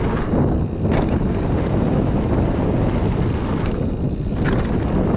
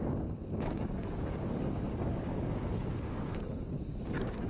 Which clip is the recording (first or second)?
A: first